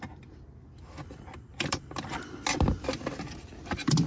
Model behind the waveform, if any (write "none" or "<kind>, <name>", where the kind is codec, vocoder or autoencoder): none